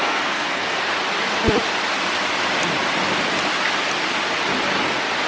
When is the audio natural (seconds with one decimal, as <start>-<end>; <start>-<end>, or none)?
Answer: 0.8-5.3